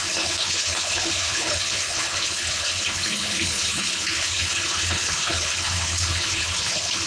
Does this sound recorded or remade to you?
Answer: remade